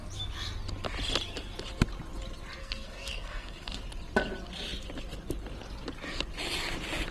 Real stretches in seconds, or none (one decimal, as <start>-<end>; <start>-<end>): 0.0-2.6; 3.8-7.1

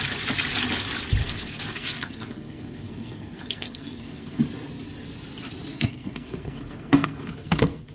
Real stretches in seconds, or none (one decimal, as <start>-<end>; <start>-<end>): 0.0-1.2; 4.4-5.7

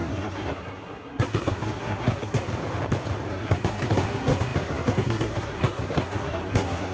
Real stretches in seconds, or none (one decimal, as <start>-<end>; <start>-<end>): 2.5-3.3

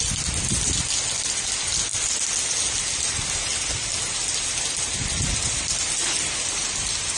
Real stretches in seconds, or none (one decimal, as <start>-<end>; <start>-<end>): 0.0-7.2

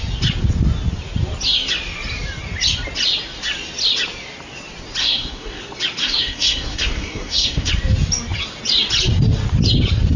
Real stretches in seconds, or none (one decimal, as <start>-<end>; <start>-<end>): 0.0-5.0; 5.6-6.0; 7.7-10.2

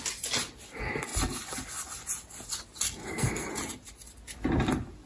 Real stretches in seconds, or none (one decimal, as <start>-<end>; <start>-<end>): 0.0-3.0; 3.5-5.1

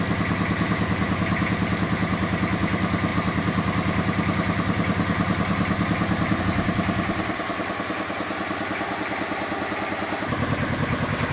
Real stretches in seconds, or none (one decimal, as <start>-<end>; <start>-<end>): 0.0-11.3